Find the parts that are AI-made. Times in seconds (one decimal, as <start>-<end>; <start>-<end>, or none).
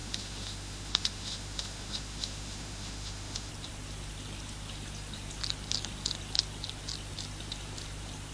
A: 0.0-3.5